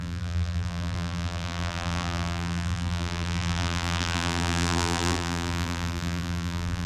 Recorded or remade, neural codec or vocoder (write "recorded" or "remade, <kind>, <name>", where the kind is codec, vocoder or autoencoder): remade, vocoder, BigVGAN v2